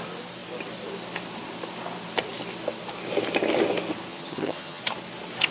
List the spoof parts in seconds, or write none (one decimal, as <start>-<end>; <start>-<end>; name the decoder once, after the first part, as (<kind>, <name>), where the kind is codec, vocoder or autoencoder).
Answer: 4.1-4.8 (vocoder, HiFi-GAN)